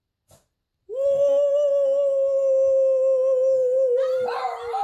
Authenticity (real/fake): real